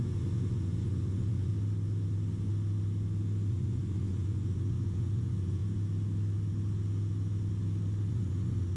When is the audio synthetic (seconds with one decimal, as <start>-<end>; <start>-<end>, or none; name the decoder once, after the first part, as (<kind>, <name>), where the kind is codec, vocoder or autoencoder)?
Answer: 0.0-1.5 (vocoder, Vocos); 3.5-5.6; 8.1-8.8